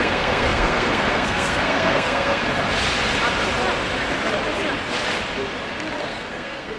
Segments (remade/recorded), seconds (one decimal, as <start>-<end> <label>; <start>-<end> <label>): 0.0-2.4 remade; 2.4-6.0 recorded; 6.0-6.8 remade